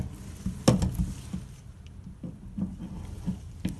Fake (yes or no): no